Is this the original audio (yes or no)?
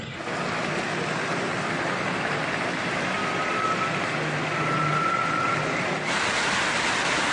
yes